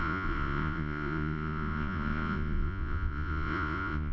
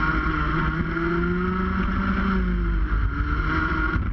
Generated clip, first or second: first